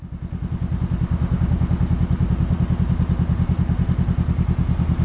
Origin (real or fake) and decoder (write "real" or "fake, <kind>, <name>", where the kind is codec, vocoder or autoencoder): real